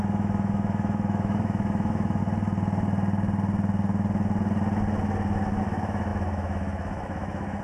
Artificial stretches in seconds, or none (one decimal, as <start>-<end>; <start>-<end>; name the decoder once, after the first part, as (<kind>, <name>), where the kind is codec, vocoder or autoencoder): 0.0-2.2 (autoencoder, DAC-VAE); 5.6-7.6